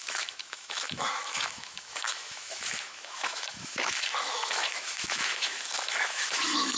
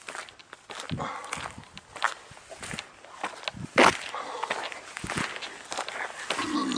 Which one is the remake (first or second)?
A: first